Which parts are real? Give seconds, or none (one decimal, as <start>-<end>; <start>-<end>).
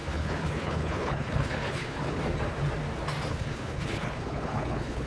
2.2-3.3